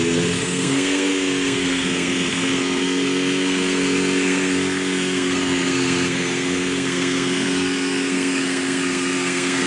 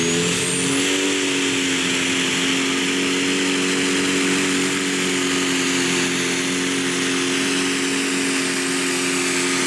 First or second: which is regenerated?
first